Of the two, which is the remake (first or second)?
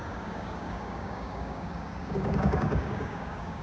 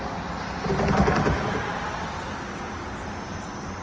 first